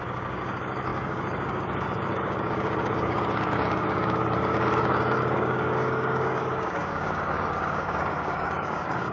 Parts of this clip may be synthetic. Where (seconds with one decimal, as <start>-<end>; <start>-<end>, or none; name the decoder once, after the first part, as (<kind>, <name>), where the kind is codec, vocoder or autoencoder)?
0.0-9.1 (codec, DAC)